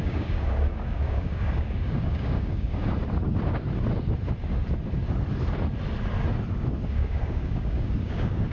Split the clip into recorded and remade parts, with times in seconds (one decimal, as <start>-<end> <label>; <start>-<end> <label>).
0.0-2.8 remade; 2.8-6.9 recorded; 6.9-8.5 remade